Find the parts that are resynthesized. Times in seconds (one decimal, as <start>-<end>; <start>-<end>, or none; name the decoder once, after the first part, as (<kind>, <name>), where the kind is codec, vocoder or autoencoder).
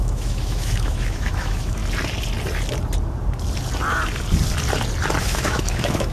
0.0-1.8 (autoencoder, DAC-VAE); 5.2-6.1